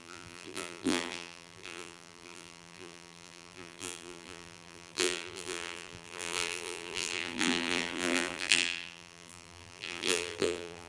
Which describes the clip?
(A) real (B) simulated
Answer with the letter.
B